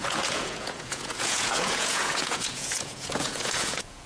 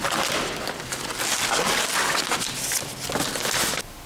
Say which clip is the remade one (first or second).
first